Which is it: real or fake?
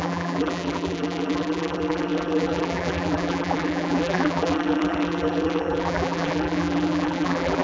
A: fake